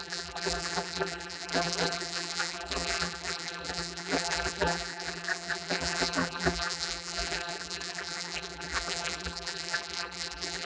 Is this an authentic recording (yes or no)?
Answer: no